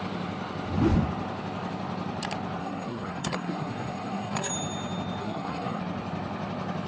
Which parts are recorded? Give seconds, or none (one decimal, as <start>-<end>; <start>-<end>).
0.0-2.6; 4.5-5.2; 5.8-6.9